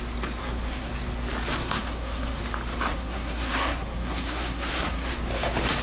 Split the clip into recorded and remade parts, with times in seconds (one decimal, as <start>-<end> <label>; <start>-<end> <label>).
0.0-0.4 recorded; 0.4-0.9 remade; 0.9-1.6 recorded; 1.6-2.4 remade; 2.4-2.9 recorded; 2.9-5.1 remade; 5.1-5.8 recorded